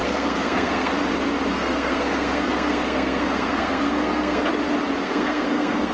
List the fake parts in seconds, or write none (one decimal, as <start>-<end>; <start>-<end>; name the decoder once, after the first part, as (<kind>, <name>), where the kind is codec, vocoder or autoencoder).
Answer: 0.0-0.9 (codec, SNAC); 1.5-4.4; 5.0-5.9